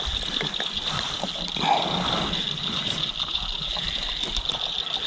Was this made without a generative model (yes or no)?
yes